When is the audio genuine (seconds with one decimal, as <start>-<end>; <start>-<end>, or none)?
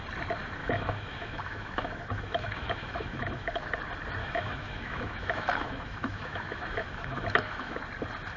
0.0-0.6; 3.7-4.2; 7.8-8.4